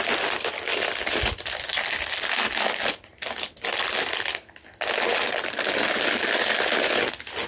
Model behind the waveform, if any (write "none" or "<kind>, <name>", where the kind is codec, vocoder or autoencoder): none